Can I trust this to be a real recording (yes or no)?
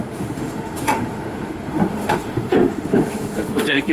no